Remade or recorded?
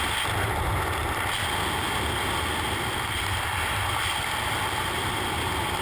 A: recorded